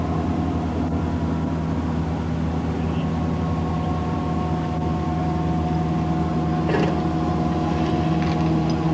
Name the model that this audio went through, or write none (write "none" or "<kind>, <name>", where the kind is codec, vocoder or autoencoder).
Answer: none